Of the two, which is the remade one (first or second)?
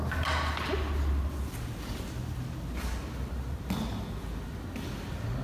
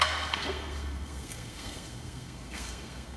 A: second